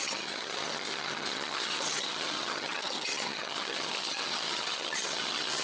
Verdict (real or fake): fake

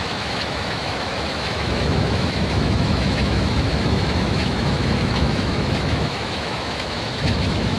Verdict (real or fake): fake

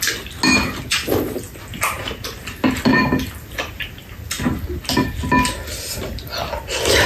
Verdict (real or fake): real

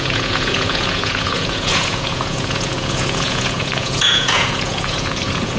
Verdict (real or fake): fake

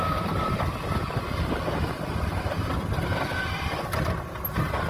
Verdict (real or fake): real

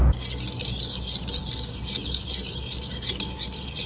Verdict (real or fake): real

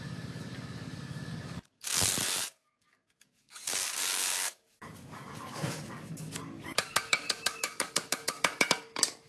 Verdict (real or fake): fake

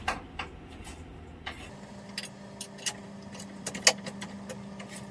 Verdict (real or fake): real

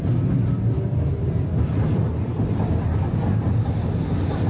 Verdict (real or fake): real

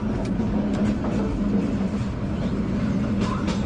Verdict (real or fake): real